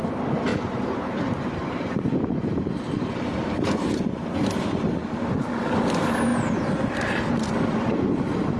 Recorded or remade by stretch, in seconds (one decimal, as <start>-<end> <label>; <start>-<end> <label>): 0.0-0.5 recorded; 0.5-2.8 remade; 2.8-6.3 recorded; 6.3-7.5 remade; 7.5-8.6 recorded